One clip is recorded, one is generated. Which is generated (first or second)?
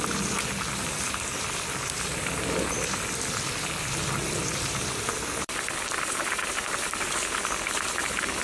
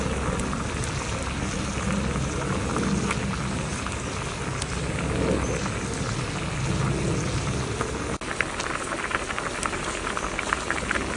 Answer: first